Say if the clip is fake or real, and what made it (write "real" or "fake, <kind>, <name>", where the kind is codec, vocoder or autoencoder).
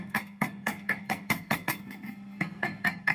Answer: fake, codec, SNAC